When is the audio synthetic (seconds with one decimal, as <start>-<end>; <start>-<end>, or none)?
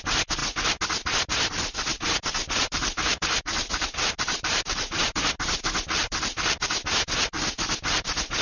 1.9-5.3; 6.0-6.7